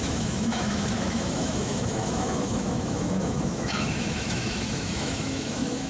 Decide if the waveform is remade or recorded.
remade